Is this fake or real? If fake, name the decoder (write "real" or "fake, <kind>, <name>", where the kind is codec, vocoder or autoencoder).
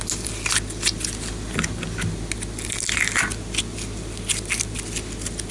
real